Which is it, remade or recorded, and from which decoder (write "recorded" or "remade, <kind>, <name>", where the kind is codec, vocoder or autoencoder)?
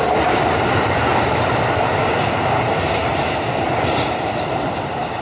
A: remade, vocoder, BigVGAN v2